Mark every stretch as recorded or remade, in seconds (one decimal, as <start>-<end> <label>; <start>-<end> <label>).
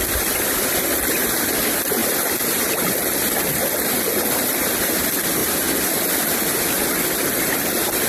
0.0-8.1 recorded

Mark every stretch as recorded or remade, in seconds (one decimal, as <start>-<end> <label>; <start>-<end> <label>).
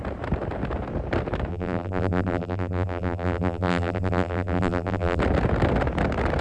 0.0-1.5 recorded; 1.5-5.2 remade; 5.2-6.4 recorded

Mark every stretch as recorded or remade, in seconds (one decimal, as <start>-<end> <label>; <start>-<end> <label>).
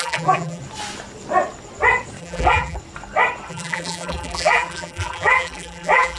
0.0-0.6 remade; 0.6-2.2 recorded; 2.2-2.8 remade; 2.8-3.5 recorded; 3.5-6.2 remade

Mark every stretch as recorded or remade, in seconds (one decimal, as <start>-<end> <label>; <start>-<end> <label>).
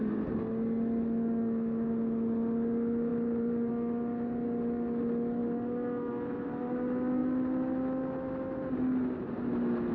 0.0-3.1 recorded; 3.1-3.7 remade; 3.7-9.9 recorded